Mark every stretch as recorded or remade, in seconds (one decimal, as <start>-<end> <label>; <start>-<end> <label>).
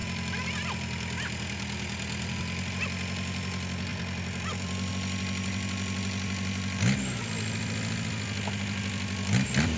0.0-3.9 recorded; 3.9-4.9 remade; 4.9-9.8 recorded